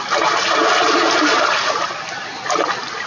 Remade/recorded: recorded